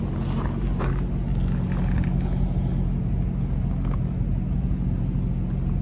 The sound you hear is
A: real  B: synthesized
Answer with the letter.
A